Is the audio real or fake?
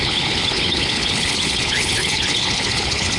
fake